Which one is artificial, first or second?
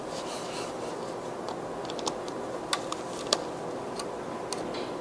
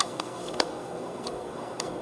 second